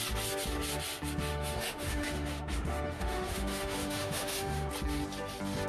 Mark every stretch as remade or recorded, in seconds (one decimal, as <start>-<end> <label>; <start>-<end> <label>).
0.0-1.3 recorded; 1.3-4.7 remade; 4.7-5.7 recorded